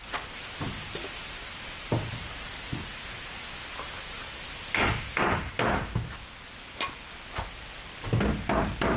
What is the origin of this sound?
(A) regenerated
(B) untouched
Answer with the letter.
B